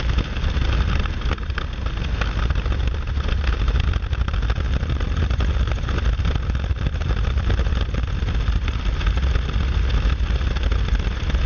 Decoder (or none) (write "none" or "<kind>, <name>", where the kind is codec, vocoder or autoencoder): none